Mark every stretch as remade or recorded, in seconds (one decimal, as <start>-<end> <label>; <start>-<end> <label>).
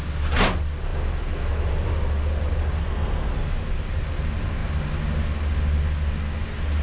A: 0.0-2.8 recorded; 2.8-3.3 remade; 3.3-6.8 recorded